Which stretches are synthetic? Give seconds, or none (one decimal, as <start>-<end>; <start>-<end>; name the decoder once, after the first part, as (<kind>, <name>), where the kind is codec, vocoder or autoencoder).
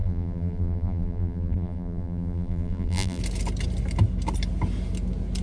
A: 0.0-3.2 (vocoder, BigVGAN v2)